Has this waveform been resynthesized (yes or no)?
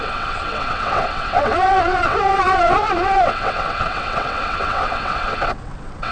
yes